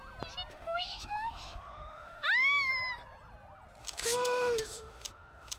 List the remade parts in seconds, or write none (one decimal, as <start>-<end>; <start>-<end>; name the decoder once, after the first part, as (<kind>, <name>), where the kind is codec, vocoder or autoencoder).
0.5-2.7 (autoencoder, DAC-VAE); 3.8-5.6